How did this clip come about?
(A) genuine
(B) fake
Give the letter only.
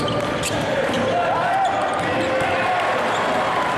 A